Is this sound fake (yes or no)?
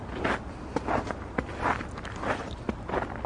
no